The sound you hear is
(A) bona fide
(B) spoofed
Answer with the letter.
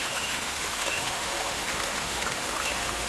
B